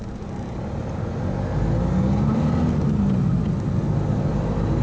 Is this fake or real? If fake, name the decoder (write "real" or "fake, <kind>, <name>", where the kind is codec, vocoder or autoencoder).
real